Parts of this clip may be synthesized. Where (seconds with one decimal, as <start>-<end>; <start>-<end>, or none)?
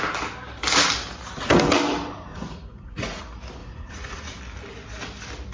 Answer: 2.3-3.2; 3.6-4.4